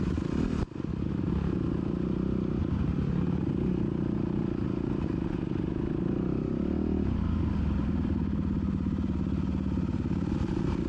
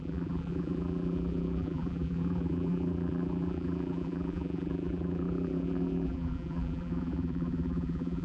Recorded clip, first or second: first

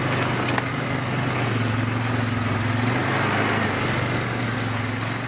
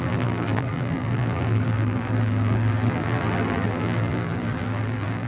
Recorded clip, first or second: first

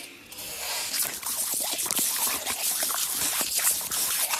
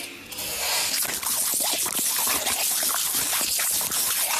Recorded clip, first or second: second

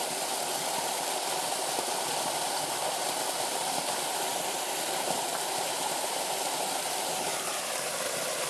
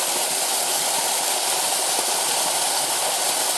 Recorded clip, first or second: second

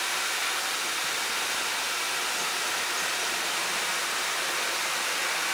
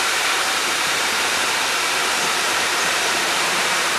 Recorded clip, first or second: first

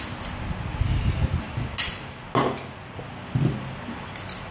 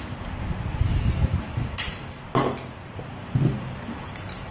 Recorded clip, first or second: first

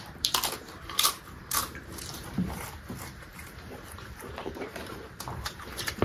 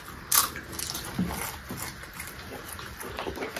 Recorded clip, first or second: second